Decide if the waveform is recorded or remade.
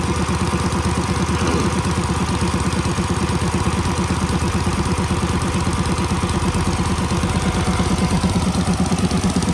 recorded